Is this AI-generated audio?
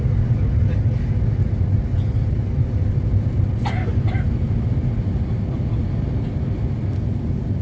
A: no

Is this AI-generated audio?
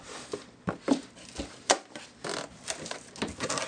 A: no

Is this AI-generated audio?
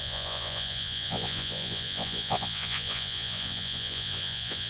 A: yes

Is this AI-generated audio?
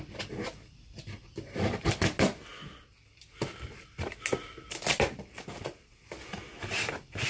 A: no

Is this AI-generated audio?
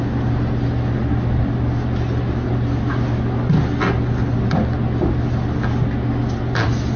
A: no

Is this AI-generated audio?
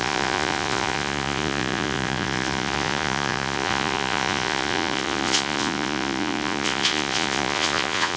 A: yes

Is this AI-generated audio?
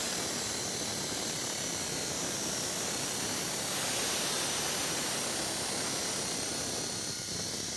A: no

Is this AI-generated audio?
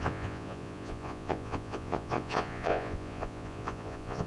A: yes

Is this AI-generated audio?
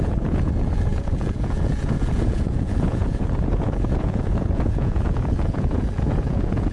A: yes